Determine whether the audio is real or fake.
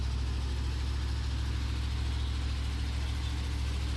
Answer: real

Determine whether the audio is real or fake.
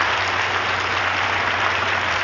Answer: real